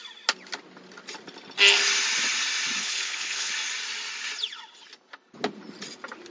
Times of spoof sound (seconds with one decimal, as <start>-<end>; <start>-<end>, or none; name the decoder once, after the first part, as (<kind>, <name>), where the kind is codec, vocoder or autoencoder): 2.8-3.5 (codec, HILCodec)